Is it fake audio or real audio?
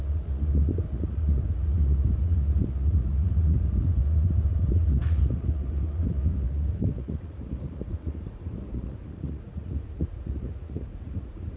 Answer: fake